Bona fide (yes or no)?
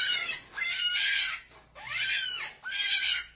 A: yes